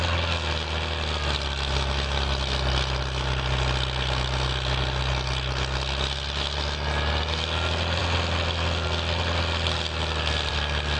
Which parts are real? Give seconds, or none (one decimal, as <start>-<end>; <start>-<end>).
0.0-11.0